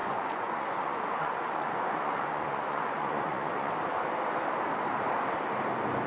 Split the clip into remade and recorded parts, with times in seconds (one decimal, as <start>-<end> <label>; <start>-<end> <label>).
0.0-3.7 remade; 3.7-6.1 recorded